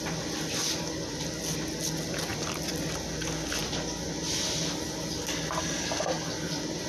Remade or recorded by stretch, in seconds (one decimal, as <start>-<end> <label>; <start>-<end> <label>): 0.0-2.3 recorded; 2.3-2.8 remade; 2.8-3.6 recorded; 3.6-5.2 remade; 5.2-6.9 recorded